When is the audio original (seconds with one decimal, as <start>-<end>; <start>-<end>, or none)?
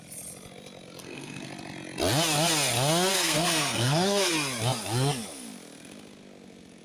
0.0-1.0; 1.5-3.1; 4.3-6.8